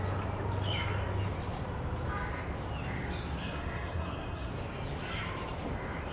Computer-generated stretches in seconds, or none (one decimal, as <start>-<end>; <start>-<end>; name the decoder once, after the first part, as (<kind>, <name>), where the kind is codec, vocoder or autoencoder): 3.4-4.5 (codec, SNAC)